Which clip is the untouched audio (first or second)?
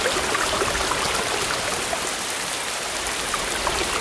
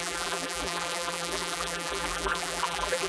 first